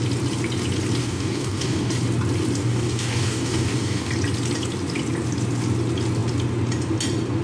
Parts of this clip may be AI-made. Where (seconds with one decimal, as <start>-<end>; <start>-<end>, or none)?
1.0-1.9; 2.6-4.1